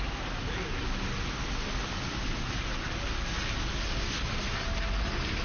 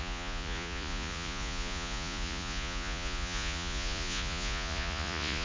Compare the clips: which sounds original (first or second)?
first